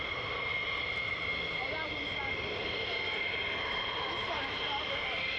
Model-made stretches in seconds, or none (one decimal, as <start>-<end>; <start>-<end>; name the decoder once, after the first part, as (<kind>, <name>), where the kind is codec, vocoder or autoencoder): none